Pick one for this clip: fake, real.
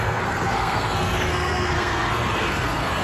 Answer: fake